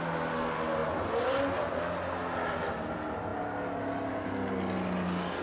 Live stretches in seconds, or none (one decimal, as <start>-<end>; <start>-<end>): 0.0-5.4